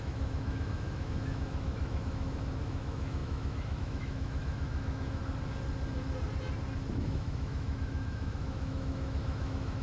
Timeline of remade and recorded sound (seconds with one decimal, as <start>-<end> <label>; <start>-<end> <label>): 0.0-5.2 remade; 5.2-6.9 recorded; 6.9-9.8 remade